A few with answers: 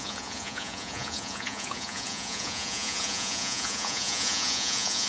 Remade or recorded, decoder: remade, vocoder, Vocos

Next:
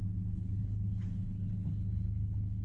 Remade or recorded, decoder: remade, codec, HILCodec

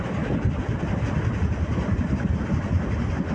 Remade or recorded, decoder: recorded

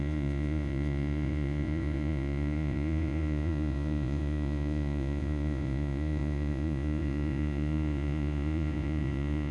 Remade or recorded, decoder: remade, vocoder, Vocos